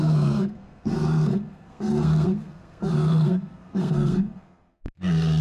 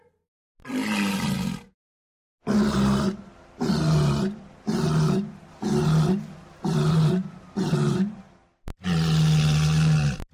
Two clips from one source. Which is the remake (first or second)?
first